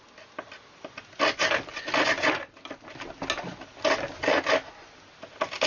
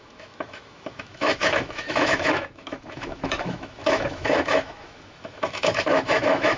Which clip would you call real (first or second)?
first